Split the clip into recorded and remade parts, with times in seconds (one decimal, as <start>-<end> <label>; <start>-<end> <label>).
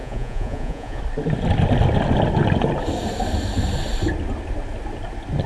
0.0-1.0 remade; 1.0-5.5 recorded